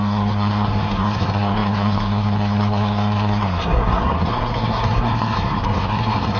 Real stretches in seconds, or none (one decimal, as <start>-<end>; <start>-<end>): none